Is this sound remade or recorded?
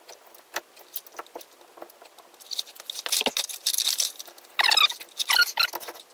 recorded